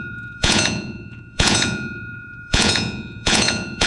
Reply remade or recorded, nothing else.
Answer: remade